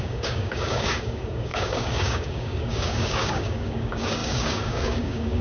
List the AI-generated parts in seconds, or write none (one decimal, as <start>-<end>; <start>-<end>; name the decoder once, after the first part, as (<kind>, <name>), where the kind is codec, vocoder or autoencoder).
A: 0.0-5.4 (codec, DAC)